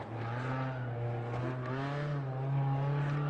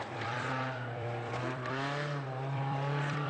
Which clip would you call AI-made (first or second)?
second